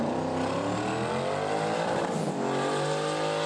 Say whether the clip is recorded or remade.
recorded